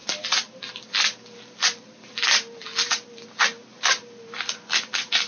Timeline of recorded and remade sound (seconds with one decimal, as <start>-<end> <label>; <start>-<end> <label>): 0.0-0.6 remade; 0.6-3.6 recorded; 3.6-5.3 remade